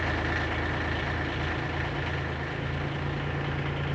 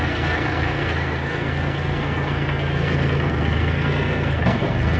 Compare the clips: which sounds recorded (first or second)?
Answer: first